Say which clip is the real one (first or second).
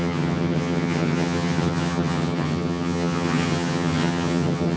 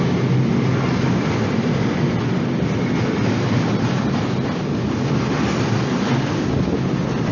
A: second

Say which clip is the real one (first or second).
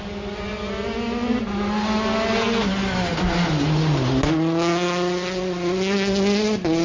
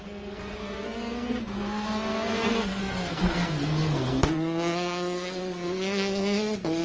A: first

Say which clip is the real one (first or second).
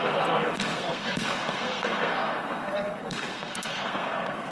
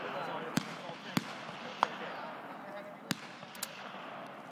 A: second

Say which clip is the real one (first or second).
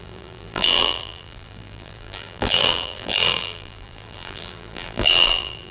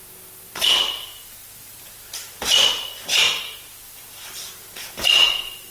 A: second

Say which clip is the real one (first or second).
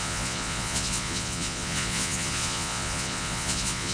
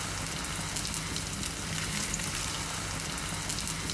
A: second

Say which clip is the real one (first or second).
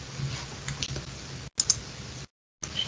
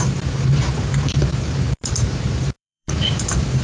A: first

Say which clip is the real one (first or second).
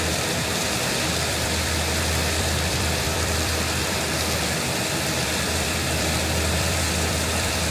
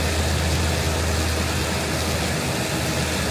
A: second